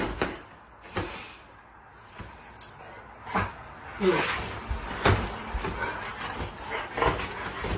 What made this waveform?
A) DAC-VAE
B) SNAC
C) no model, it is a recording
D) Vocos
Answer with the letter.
C